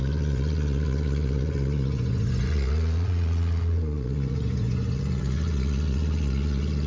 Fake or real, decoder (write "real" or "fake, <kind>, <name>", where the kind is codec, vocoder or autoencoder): fake, vocoder, Vocos